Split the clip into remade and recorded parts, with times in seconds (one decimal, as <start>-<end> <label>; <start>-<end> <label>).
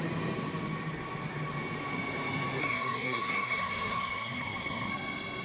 0.0-2.6 recorded; 2.6-4.9 remade; 4.9-5.4 recorded